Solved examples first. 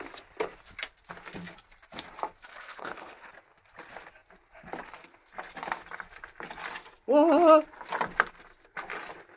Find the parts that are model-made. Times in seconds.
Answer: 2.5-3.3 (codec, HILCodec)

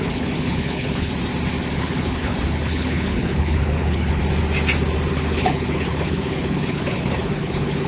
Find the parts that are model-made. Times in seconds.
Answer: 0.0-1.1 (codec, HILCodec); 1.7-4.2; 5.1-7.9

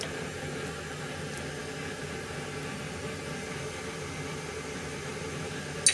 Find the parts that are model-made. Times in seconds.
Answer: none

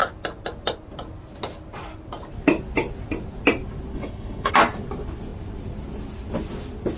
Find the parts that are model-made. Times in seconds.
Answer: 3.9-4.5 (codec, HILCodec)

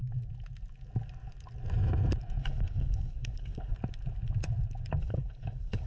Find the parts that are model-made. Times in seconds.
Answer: 2.4-3.7 (codec, HILCodec); 5.0-5.9

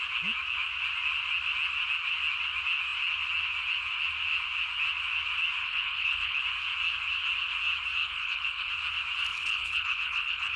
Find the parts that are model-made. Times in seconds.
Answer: 5.6-6.4 (codec, HILCodec); 8.0-8.7; 9.3-10.6